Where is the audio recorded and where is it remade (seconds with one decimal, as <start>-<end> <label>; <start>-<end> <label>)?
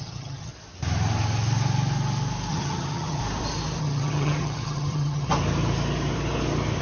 0.0-0.5 remade; 0.5-2.5 recorded; 2.5-3.2 remade; 3.2-3.8 recorded; 3.8-5.3 remade; 5.3-6.8 recorded